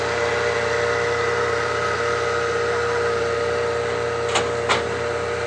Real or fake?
real